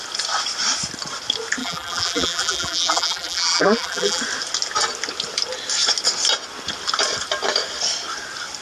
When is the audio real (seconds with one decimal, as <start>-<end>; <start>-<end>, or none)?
0.0-1.6; 4.2-8.6